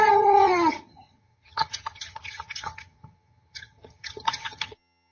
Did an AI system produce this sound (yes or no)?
yes